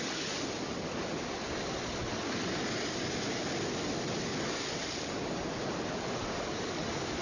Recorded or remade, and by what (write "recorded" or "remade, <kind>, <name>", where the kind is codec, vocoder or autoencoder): recorded